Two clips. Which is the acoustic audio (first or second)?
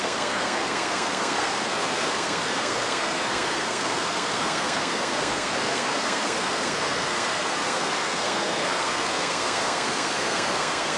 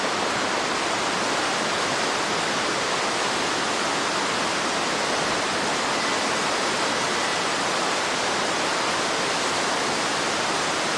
second